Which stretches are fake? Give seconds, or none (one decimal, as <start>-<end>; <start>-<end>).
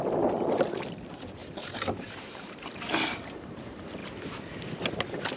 1.4-3.6